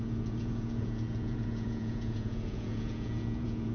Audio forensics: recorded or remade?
remade